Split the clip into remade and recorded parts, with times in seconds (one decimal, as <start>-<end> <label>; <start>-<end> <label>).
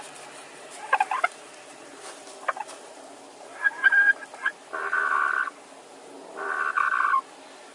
0.0-7.7 recorded